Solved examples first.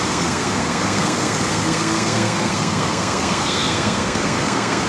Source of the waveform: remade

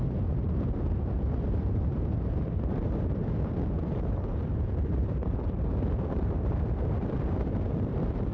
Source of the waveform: remade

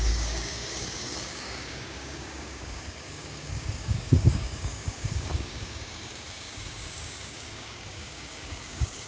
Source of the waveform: remade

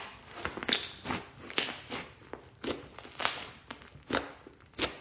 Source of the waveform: recorded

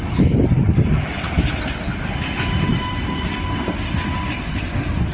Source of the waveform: recorded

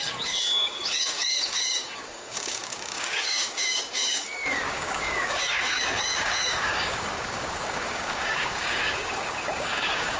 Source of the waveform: remade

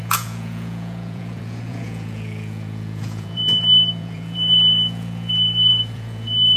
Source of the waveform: remade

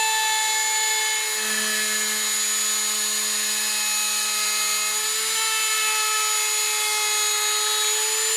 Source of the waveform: recorded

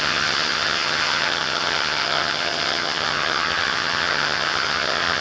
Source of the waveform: remade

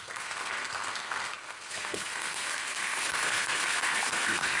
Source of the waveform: remade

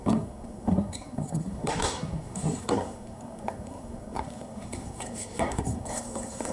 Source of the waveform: remade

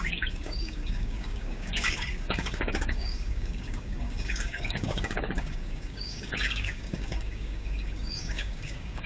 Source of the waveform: remade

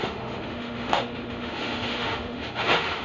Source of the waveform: remade